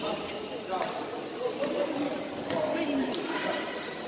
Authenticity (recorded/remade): recorded